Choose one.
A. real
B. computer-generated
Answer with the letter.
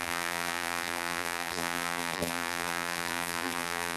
B